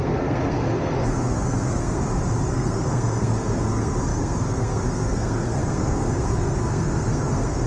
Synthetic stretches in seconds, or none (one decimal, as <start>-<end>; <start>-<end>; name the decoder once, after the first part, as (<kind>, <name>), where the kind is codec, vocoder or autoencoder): 0.0-2.0 (codec, SNAC); 2.5-7.7